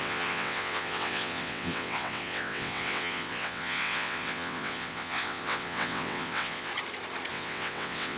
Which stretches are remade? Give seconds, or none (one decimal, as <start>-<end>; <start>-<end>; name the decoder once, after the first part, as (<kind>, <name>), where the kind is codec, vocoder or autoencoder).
0.0-6.7 (vocoder, WaveNeXt); 7.3-8.2